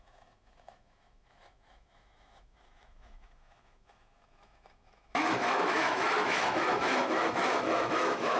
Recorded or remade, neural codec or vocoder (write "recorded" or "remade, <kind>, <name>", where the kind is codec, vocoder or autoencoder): remade, autoencoder, DAC-VAE